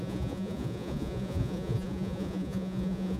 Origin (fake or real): fake